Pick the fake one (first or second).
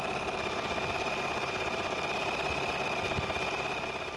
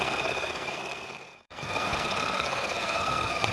second